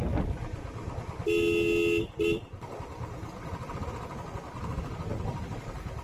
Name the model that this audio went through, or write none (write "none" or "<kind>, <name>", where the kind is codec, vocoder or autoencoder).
none